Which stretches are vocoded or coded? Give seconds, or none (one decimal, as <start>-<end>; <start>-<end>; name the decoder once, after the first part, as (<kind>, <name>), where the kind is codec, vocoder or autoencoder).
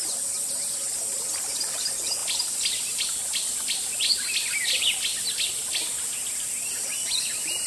none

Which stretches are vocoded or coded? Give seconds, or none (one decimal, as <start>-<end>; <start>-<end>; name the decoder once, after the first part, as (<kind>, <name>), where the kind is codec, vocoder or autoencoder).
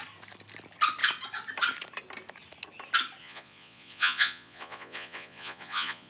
3.2-6.1 (vocoder, Vocos)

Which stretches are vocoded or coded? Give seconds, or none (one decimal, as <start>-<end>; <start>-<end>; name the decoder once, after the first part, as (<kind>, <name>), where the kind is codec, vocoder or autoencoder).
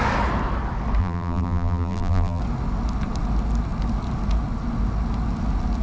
1.0-2.4 (vocoder, BigVGAN v2)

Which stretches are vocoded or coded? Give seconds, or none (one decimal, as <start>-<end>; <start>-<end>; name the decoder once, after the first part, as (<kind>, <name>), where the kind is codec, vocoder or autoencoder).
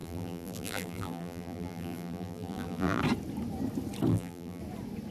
0.0-3.0 (vocoder, BigVGAN v2); 4.1-4.6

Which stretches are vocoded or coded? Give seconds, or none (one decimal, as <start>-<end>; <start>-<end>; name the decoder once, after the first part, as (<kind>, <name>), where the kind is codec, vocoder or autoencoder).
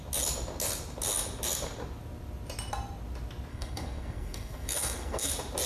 3.5-5.3 (codec, SNAC)